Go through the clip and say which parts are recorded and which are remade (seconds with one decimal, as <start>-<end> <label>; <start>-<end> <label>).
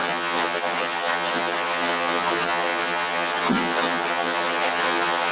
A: 0.0-5.3 remade